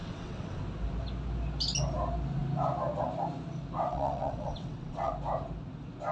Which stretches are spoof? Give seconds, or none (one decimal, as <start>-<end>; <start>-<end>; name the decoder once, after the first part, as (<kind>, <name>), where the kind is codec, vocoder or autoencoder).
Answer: 0.0-0.6 (vocoder, WaveNeXt); 3.9-5.1